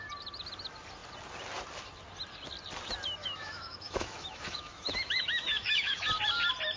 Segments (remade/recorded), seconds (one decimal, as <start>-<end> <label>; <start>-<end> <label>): 0.0-3.2 recorded; 3.2-6.1 remade; 6.1-6.8 recorded